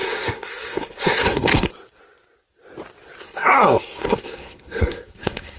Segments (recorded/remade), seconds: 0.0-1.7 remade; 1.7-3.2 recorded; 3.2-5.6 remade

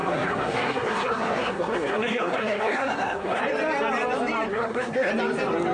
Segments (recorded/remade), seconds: 0.0-3.4 remade; 3.4-4.5 recorded; 4.5-5.1 remade; 5.1-5.7 recorded

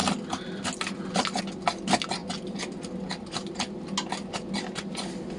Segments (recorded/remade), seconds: 0.0-5.4 recorded

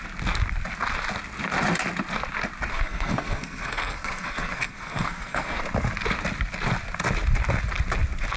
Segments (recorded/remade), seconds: 0.0-2.7 recorded; 2.7-5.6 remade; 5.6-8.4 recorded

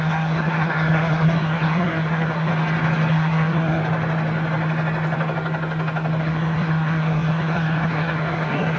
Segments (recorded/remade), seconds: 0.0-2.5 remade; 2.5-3.1 recorded; 3.1-3.8 remade; 3.8-6.2 recorded; 6.2-8.8 remade

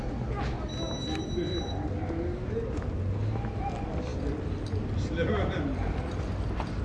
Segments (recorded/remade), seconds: 0.0-6.8 recorded

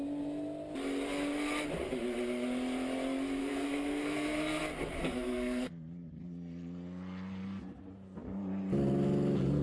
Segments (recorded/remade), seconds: 0.0-3.4 recorded; 3.4-4.6 remade; 4.6-5.0 recorded; 5.0-5.7 remade; 5.7-9.6 recorded

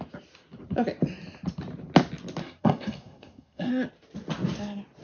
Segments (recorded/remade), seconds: 0.0-2.4 recorded; 2.4-3.7 remade; 3.7-5.0 recorded